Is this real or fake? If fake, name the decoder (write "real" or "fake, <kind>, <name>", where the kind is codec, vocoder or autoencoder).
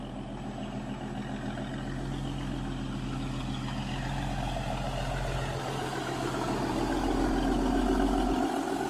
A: real